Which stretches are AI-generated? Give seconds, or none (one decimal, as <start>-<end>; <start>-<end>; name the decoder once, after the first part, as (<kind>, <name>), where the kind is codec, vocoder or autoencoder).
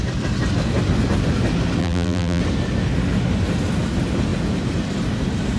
1.8-2.4 (vocoder, BigVGAN v2)